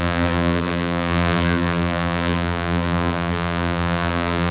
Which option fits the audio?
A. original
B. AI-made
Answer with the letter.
B